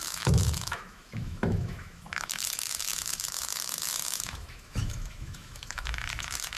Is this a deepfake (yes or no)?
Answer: yes